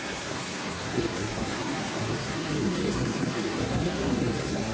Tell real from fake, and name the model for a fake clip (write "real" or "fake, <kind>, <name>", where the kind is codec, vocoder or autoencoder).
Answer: fake, codec, SNAC